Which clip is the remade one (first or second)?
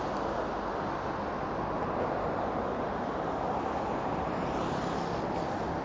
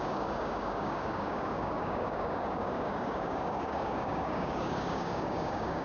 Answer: second